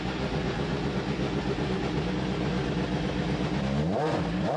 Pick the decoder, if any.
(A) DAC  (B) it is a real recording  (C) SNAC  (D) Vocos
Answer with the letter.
B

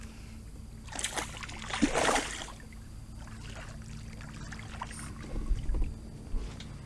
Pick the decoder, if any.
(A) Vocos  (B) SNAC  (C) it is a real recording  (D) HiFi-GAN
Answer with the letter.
C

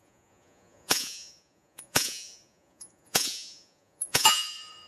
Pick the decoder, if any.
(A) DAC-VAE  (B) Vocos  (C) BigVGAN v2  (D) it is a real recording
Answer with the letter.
B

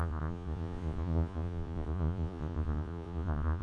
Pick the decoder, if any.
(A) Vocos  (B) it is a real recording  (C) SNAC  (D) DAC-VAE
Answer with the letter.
A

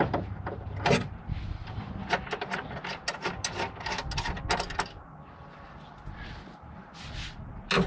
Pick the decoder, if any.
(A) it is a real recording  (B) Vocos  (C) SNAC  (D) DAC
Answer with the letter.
A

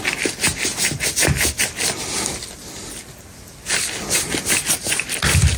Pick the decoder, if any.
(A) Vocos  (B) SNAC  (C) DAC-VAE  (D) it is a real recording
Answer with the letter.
D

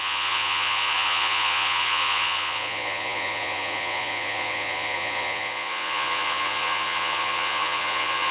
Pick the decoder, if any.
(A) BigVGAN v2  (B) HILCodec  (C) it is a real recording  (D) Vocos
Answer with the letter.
D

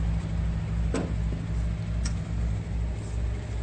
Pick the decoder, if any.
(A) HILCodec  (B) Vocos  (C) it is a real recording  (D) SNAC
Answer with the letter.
C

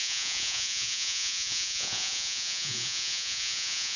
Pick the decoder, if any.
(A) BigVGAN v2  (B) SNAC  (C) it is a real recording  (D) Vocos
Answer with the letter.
D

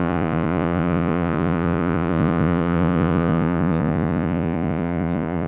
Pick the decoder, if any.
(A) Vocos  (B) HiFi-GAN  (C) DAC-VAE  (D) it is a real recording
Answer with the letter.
A